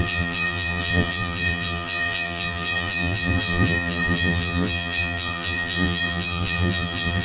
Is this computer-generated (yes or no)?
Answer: yes